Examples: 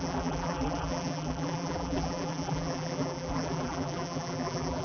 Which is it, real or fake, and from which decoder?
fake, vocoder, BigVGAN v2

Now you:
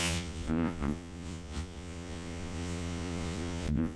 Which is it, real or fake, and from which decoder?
fake, vocoder, Vocos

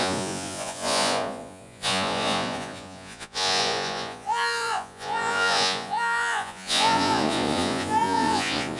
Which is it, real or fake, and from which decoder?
fake, vocoder, Vocos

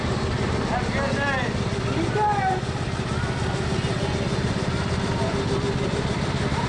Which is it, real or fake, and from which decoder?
real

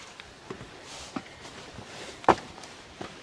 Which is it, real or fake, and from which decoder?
fake, vocoder, BigVGAN v2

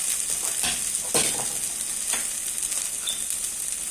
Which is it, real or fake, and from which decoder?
real